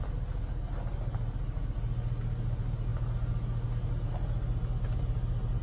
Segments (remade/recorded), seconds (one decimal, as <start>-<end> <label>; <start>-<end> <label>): 0.0-5.6 recorded